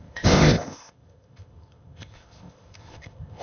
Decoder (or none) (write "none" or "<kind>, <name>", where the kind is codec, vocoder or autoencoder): codec, ZipCodec